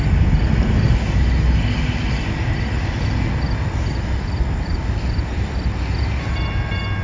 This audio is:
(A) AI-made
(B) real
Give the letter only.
B